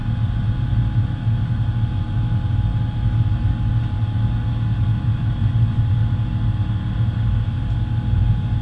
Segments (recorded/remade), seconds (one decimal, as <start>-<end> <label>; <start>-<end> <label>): 0.0-8.6 recorded